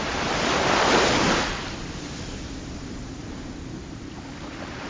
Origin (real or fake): real